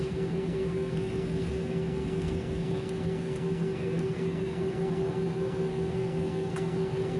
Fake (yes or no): yes